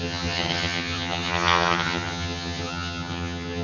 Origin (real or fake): fake